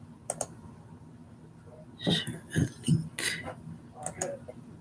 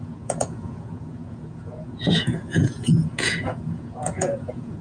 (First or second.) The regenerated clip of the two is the second